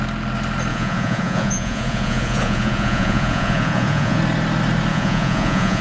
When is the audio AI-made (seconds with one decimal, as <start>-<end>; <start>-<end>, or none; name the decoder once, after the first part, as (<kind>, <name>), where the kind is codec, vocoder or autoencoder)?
0.7-4.2 (vocoder, Vocos); 4.9-5.8